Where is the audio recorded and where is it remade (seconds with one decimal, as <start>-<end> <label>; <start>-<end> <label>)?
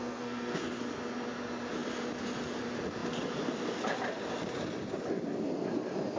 0.0-0.8 remade; 0.8-6.2 recorded